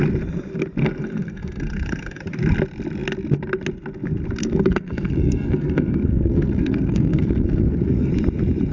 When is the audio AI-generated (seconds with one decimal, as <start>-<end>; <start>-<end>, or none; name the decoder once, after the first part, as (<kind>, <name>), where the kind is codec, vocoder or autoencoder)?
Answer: 0.8-2.2 (codec, SNAC); 4.4-8.1